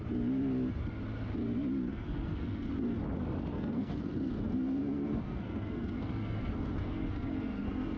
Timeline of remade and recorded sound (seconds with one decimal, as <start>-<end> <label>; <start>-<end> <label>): 0.0-1.9 recorded; 1.9-2.7 remade; 2.7-3.5 recorded; 3.5-8.0 remade